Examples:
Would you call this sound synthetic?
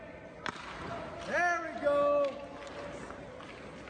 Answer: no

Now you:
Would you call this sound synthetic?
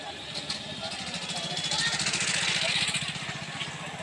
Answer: no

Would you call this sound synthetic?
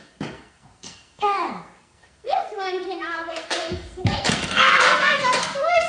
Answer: yes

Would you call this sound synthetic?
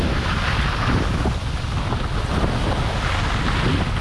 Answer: no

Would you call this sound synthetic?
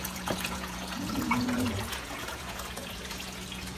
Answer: yes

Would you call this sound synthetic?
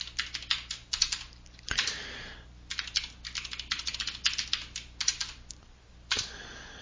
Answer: no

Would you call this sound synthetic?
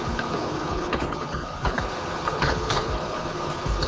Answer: yes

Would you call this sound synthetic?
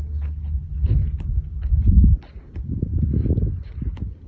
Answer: no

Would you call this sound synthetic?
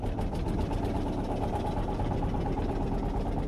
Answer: no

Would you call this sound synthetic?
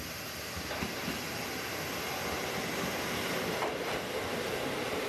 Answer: no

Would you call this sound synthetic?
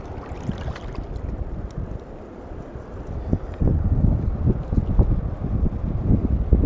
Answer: no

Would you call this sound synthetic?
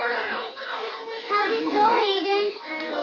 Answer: yes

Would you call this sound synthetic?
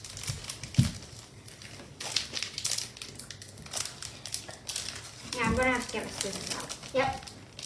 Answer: no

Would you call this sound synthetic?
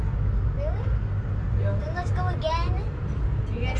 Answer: no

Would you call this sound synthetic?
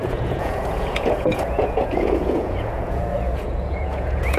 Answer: yes